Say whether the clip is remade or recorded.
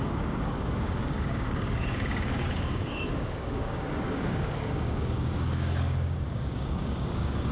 remade